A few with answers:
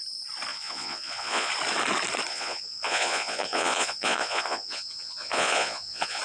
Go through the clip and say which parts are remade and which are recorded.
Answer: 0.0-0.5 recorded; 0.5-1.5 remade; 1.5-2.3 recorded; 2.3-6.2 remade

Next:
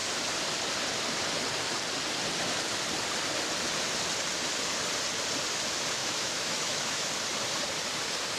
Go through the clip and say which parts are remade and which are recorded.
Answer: 0.0-6.0 recorded; 6.0-7.1 remade; 7.1-8.4 recorded

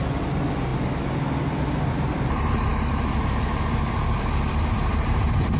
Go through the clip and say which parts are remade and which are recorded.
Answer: 0.0-0.7 remade; 0.7-1.9 recorded; 1.9-5.6 remade